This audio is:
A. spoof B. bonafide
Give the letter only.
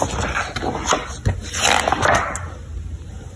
B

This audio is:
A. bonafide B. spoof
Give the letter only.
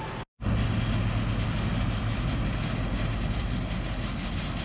A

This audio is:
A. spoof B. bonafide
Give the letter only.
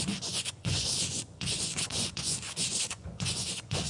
A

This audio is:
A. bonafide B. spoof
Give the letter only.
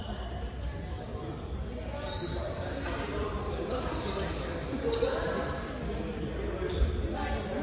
A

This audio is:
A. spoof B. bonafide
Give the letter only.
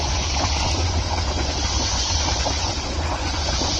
A